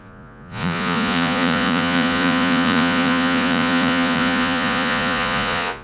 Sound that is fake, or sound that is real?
fake